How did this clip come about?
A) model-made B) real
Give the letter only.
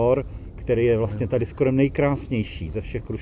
B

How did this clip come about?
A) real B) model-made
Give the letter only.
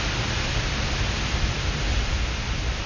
A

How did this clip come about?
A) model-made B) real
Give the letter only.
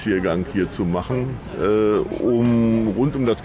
B